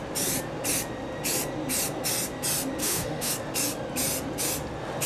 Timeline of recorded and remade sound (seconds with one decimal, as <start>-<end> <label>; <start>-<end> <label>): 0.0-2.8 recorded; 2.8-3.3 remade; 3.3-5.1 recorded